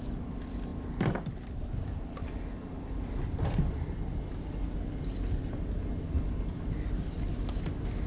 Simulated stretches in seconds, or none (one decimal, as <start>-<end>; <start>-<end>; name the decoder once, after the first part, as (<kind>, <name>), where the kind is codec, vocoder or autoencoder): none